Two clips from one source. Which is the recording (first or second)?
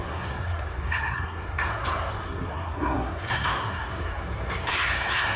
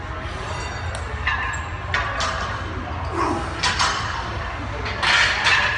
second